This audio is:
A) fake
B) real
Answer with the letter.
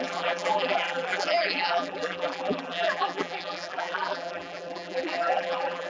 A